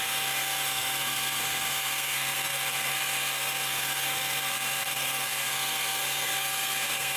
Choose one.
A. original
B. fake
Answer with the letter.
B